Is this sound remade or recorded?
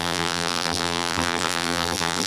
remade